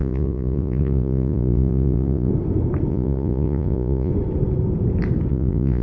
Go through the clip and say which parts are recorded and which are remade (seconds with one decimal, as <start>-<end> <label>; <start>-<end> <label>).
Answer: 0.0-2.3 remade; 2.3-2.9 recorded; 2.9-4.1 remade; 4.1-5.3 recorded; 5.3-5.8 remade